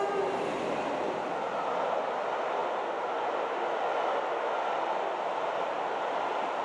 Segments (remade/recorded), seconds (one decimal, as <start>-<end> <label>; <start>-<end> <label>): 0.0-6.6 recorded